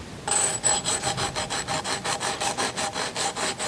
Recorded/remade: recorded